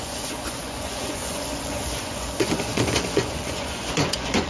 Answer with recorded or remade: remade